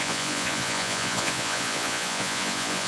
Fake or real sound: fake